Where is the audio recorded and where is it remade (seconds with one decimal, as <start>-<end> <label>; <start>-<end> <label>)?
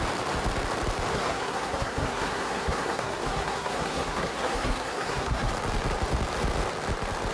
0.0-1.1 recorded; 1.1-5.5 remade; 5.5-7.3 recorded